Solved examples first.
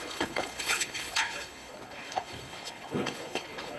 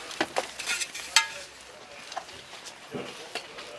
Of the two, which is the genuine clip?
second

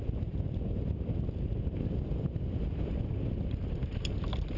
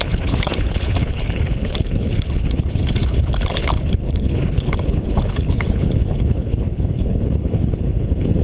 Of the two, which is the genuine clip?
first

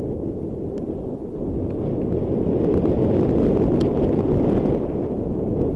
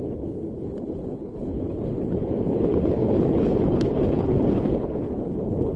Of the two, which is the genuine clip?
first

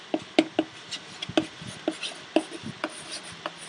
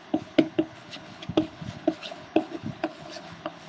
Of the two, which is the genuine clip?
first